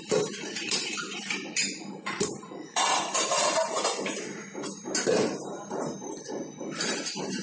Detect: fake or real fake